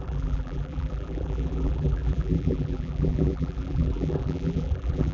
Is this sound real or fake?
fake